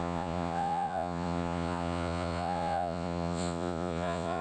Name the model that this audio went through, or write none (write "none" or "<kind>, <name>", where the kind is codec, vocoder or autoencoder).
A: vocoder, Vocos